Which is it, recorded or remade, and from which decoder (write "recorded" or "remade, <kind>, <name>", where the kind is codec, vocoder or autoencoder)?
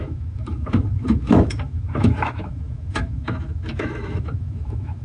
remade, autoencoder, DAC-VAE